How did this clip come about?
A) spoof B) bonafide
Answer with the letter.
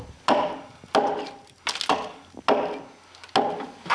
B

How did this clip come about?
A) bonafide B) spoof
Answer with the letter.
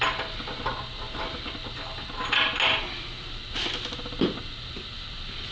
A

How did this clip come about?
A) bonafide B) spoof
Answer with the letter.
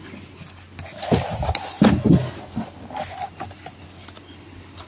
A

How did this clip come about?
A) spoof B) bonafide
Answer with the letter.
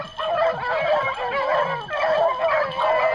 B